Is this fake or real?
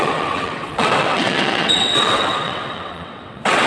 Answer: fake